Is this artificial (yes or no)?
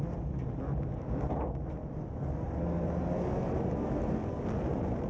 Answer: no